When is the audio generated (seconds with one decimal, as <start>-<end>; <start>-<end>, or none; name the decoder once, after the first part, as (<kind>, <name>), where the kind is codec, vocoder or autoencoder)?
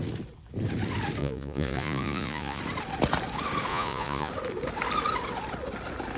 1.2-2.6 (vocoder, Vocos); 3.7-4.3